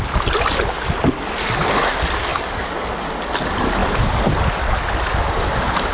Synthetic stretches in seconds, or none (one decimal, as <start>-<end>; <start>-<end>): 2.3-2.9